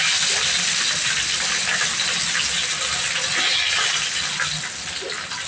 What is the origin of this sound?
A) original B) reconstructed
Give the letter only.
A